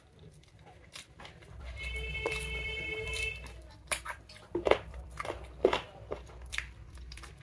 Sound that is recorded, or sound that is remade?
remade